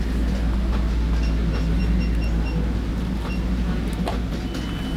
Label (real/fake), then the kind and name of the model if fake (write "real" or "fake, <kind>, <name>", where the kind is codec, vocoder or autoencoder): real